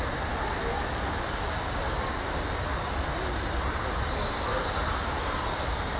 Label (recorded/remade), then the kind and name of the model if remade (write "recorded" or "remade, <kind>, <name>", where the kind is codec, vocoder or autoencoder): recorded